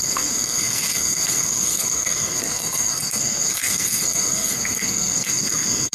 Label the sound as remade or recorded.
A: remade